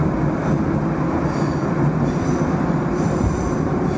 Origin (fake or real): real